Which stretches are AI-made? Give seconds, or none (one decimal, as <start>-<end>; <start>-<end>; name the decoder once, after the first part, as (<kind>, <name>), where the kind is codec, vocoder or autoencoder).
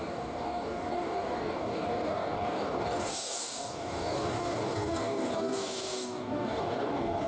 0.0-7.3 (codec, DAC)